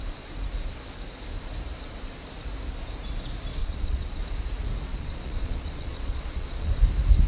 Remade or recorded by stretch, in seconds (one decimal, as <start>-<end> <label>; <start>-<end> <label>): 0.0-3.6 recorded; 3.6-4.2 remade; 4.2-4.9 recorded; 4.9-6.7 remade; 6.7-7.3 recorded